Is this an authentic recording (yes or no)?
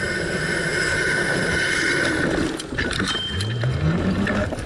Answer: yes